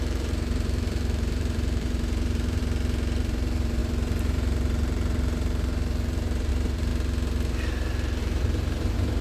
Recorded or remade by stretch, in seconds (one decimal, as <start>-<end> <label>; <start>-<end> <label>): 0.0-2.6 remade; 2.6-3.2 recorded; 3.2-6.9 remade; 6.9-8.2 recorded; 8.2-9.2 remade